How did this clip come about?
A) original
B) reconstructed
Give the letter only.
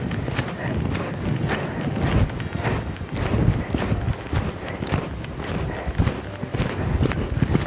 A